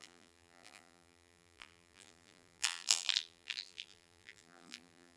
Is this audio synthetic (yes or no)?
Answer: yes